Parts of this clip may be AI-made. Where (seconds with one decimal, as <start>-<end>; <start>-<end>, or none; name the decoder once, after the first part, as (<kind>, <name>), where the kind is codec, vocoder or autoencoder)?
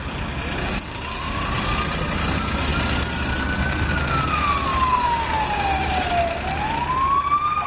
0.6-1.6 (codec, DAC); 4.7-6.1